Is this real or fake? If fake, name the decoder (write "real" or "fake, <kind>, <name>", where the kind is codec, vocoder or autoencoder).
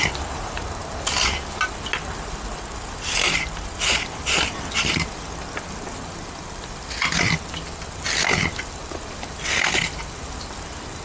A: real